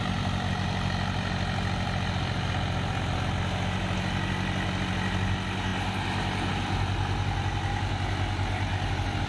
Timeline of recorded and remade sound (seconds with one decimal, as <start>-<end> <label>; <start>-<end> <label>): 0.0-9.3 recorded

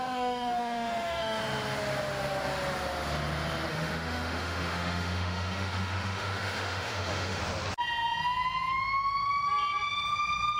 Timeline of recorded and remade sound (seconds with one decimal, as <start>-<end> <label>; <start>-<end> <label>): 0.0-1.4 remade; 1.4-3.7 recorded; 3.7-7.4 remade; 7.4-10.6 recorded